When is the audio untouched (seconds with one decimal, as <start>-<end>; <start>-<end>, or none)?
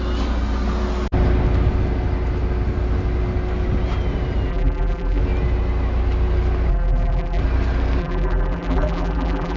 0.0-4.5; 5.2-6.7; 7.4-8.0